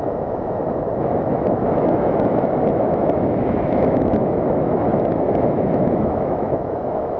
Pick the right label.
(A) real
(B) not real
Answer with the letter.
B